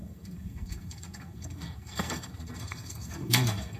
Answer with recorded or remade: remade